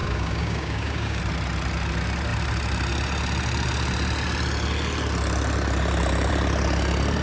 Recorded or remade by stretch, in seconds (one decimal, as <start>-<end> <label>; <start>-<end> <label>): 0.0-1.2 remade; 1.2-7.2 recorded